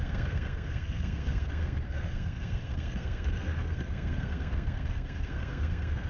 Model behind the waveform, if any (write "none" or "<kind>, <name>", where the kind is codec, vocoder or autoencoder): codec, SNAC